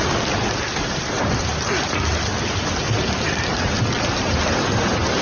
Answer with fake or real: real